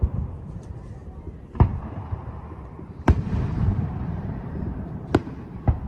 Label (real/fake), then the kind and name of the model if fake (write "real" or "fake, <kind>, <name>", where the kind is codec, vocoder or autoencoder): fake, vocoder, BigVGAN v2